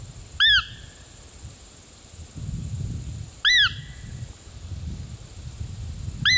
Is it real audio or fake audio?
real